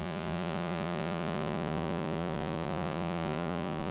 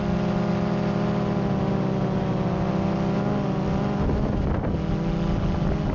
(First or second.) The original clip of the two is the second